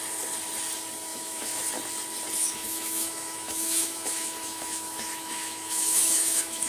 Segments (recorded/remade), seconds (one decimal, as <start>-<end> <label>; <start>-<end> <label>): 0.0-1.1 recorded; 1.1-1.6 remade; 1.6-2.4 recorded; 2.4-6.7 remade